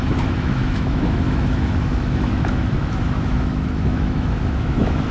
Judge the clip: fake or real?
fake